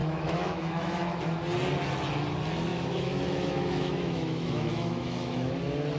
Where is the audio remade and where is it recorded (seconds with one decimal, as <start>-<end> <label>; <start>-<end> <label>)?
0.0-1.2 remade; 1.2-2.7 recorded; 2.7-5.5 remade; 5.5-6.0 recorded